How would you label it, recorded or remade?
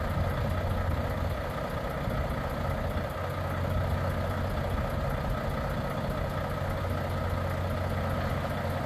recorded